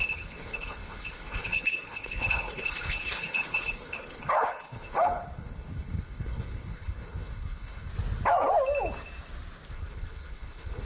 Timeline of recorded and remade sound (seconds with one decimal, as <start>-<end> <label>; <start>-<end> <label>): 0.0-7.9 remade; 7.9-9.7 recorded; 9.7-10.8 remade